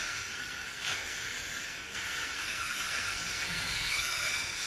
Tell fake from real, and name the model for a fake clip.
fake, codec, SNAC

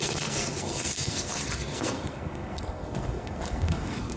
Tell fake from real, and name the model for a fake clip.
fake, codec, SNAC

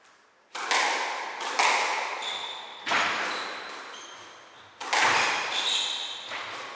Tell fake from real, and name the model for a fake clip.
real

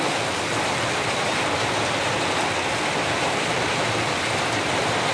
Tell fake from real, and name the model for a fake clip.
real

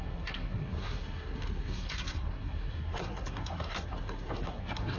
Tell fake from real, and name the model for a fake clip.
fake, codec, SNAC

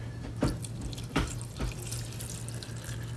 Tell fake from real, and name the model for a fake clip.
real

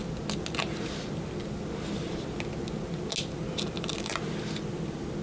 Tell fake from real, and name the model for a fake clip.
real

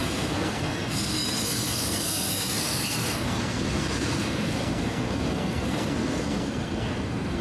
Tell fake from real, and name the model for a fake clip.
fake, codec, SNAC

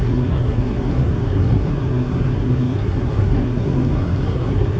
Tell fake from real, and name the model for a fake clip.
fake, codec, SNAC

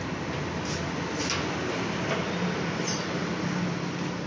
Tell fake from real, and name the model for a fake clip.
real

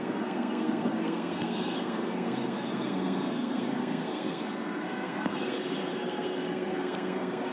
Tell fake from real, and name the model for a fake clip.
fake, codec, SNAC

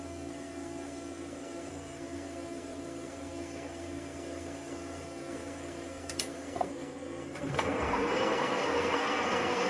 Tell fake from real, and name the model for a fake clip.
fake, codec, SNAC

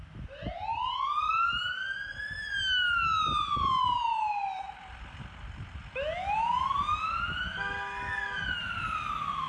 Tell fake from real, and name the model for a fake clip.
real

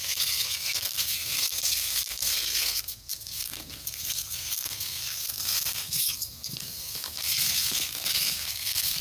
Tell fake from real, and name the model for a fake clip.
fake, codec, SNAC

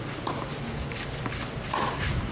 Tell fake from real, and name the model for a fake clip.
real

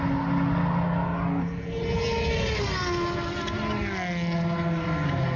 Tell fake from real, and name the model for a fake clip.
real